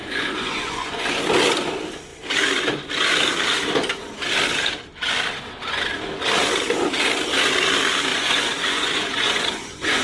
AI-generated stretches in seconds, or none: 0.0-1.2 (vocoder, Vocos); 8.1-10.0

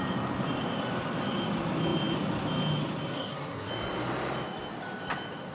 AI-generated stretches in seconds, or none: 3.1-3.7 (codec, SNAC)